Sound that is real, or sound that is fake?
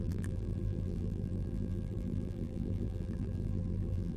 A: fake